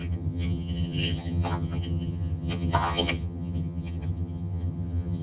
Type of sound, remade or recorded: remade